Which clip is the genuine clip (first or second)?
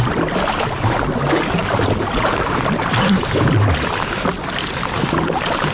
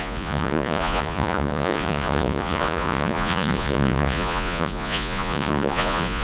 first